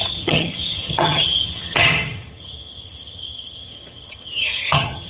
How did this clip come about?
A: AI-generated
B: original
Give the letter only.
A